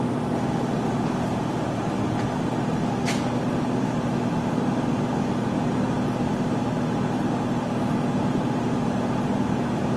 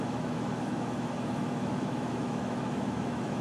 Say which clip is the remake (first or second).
second